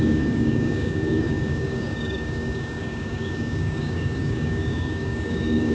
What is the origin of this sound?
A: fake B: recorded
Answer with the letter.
A